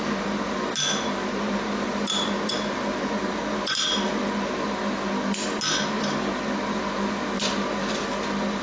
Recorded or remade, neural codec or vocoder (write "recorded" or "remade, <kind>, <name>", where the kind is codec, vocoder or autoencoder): recorded